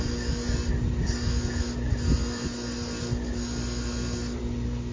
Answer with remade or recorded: recorded